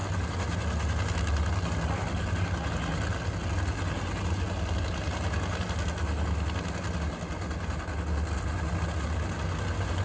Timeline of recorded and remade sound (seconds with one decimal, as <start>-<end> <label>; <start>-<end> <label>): 0.0-10.0 recorded